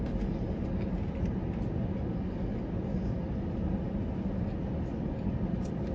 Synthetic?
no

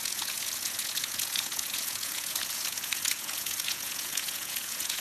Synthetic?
yes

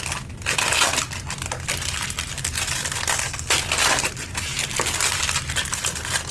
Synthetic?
no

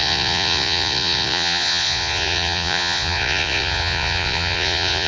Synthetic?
yes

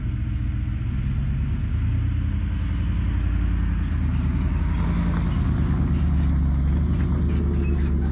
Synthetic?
no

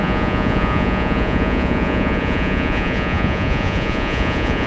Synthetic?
yes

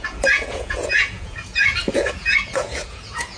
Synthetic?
yes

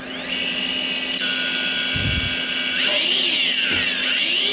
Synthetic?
no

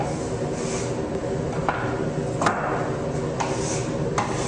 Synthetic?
no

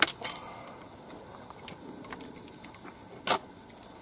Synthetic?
no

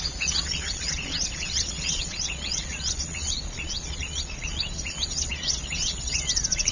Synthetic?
yes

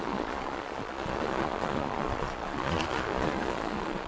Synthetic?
yes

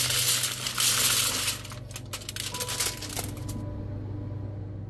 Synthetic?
no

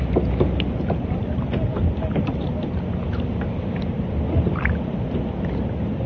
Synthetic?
no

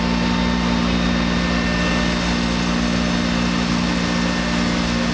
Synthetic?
no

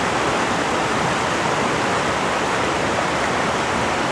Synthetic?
no